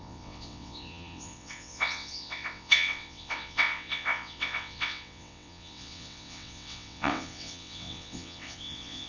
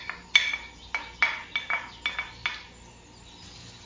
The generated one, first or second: first